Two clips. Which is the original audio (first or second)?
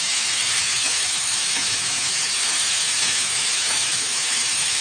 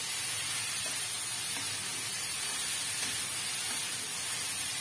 second